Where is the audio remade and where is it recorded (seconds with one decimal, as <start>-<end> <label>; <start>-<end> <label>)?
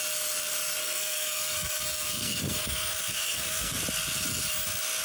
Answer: 0.0-0.8 recorded; 0.8-3.8 remade; 3.8-5.0 recorded